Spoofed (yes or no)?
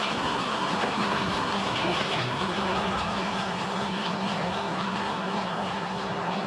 yes